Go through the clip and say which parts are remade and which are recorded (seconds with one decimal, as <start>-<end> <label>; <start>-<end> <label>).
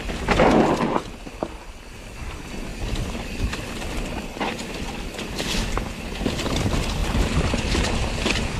0.0-7.0 recorded; 7.0-7.5 remade; 7.5-8.6 recorded